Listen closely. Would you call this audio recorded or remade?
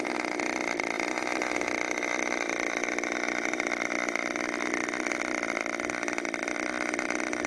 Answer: recorded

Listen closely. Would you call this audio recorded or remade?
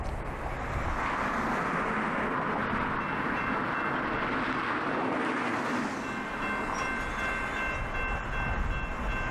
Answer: recorded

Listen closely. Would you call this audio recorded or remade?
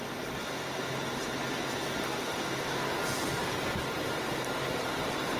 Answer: recorded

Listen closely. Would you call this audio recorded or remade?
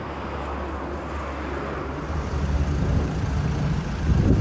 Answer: recorded